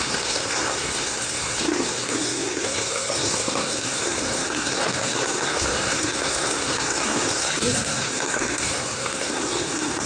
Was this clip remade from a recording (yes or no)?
yes